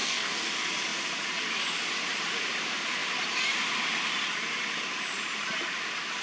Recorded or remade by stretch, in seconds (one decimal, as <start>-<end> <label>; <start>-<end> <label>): 0.0-0.5 remade; 0.5-6.2 recorded